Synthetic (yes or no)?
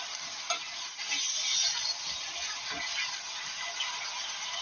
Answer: no